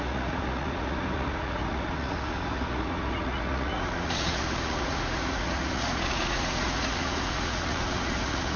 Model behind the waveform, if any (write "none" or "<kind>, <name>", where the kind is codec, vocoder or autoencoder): vocoder, Vocos